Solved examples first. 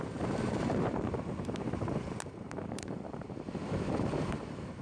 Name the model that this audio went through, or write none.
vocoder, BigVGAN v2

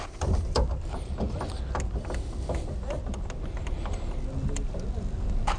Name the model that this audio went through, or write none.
none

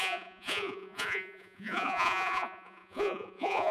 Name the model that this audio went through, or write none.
vocoder, Vocos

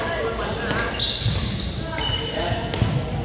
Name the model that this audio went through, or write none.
none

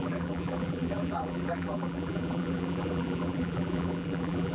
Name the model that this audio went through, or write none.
vocoder, BigVGAN v2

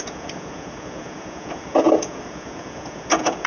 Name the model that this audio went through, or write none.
vocoder, Vocos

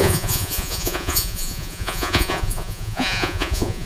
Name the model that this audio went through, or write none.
vocoder, Vocos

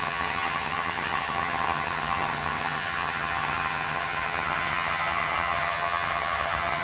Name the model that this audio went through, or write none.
vocoder, HiFi-GAN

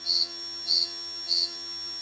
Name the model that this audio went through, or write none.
vocoder, HiFi-GAN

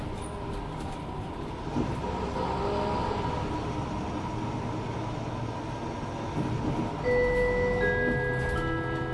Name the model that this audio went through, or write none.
none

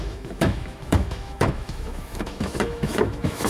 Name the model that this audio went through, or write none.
autoencoder, DAC-VAE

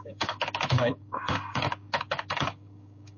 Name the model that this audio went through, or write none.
codec, DAC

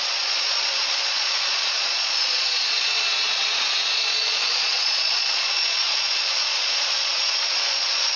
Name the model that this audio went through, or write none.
vocoder, Vocos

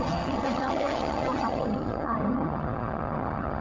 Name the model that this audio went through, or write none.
vocoder, HiFi-GAN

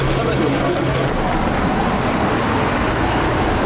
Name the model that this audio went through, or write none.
none